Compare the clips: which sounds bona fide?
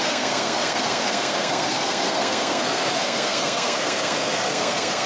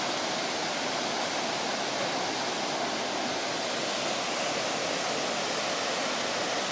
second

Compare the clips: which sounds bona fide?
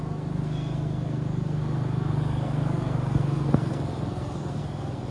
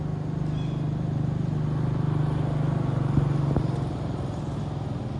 second